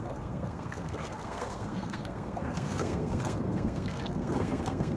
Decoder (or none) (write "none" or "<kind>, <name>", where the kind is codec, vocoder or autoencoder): codec, SNAC